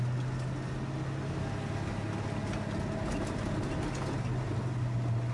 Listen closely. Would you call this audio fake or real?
real